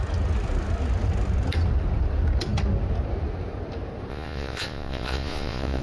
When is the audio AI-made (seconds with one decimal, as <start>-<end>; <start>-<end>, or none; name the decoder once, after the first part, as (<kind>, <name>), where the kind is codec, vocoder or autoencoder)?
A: 4.1-5.8 (vocoder, Vocos)